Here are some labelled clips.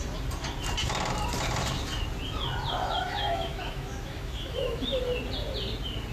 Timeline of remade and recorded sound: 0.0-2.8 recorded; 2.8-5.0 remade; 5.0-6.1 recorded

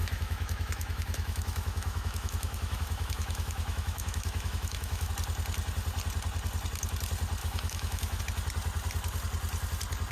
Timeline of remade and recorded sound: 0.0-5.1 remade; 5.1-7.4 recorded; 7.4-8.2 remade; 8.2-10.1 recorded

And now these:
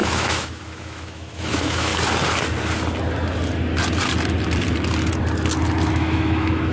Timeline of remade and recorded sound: 0.0-1.9 remade; 1.9-5.9 recorded; 5.9-6.7 remade

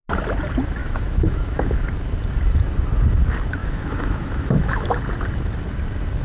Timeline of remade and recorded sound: 0.0-0.8 recorded; 0.8-1.8 remade; 1.8-3.6 recorded; 3.6-5.0 remade; 5.0-6.2 recorded

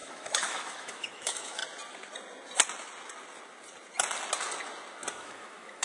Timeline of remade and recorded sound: 0.0-1.6 remade; 1.6-5.1 recorded; 5.1-5.8 remade

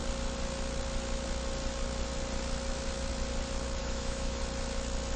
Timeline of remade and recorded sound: 0.0-3.8 recorded; 3.8-4.4 remade; 4.4-5.2 recorded